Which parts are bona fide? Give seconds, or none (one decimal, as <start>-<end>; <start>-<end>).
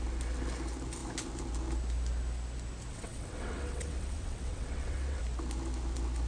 0.0-2.9; 5.2-6.3